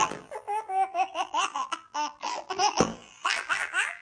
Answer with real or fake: fake